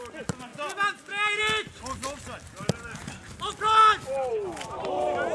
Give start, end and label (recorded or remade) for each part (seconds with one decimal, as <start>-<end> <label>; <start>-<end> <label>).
0.0-5.3 recorded